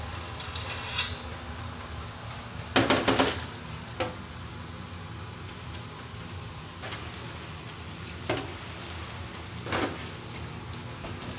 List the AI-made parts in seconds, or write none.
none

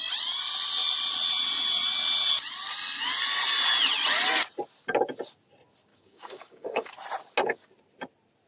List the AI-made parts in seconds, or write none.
5.9-6.9 (codec, DAC)

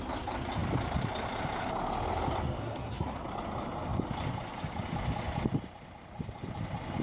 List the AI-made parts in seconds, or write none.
2.6-3.2 (codec, SNAC)

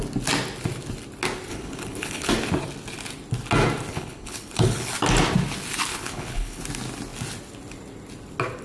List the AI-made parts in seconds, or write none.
1.5-2.3 (codec, HILCodec); 3.9-4.9; 5.9-6.6

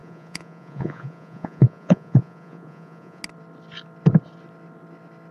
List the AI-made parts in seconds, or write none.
0.0-3.2 (vocoder, Vocos)